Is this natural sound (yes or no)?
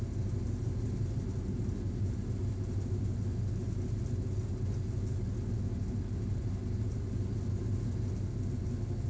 yes